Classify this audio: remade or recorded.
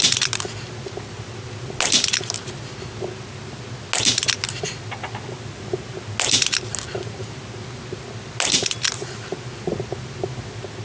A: recorded